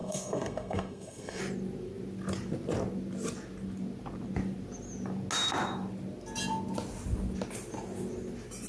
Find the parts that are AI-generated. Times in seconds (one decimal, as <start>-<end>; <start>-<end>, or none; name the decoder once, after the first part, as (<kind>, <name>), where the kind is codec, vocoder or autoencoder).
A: 0.0-1.4 (codec, SNAC)